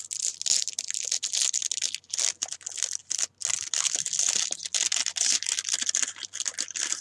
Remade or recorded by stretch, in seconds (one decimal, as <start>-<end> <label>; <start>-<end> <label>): 0.0-7.0 recorded